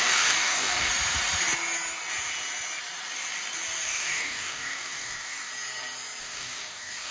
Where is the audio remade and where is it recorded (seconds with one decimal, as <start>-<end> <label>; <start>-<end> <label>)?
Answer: 0.0-0.9 remade; 0.9-3.8 recorded; 3.8-5.5 remade; 5.5-6.2 recorded; 6.2-7.1 remade